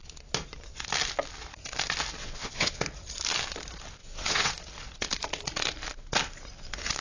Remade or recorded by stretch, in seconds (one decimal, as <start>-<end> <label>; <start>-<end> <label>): 0.0-2.2 recorded; 2.2-2.8 remade; 2.8-4.0 recorded; 4.0-4.5 remade; 4.5-7.0 recorded